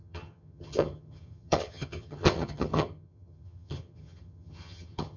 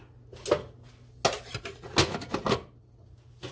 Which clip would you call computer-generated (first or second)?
first